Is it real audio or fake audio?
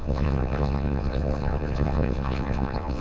fake